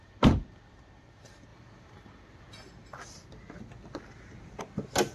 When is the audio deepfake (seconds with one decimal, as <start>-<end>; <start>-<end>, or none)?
none